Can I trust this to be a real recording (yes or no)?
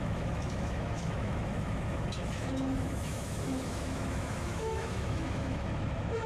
no